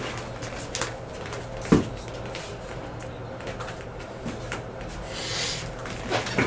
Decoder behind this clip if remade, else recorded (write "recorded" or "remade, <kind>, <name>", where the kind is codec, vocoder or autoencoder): recorded